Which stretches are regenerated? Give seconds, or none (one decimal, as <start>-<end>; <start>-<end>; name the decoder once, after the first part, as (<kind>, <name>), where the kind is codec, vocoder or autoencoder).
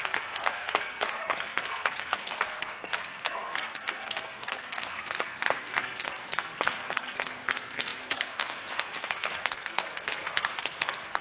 0.0-11.2 (codec, SNAC)